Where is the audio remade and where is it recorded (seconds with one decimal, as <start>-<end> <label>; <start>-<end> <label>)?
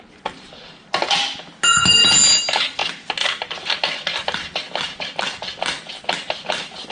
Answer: 0.0-6.9 recorded